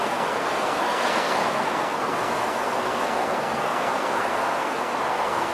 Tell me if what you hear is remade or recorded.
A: remade